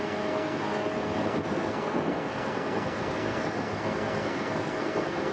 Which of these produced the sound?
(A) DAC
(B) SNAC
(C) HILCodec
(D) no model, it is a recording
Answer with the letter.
B